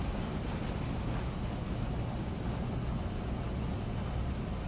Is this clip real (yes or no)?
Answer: yes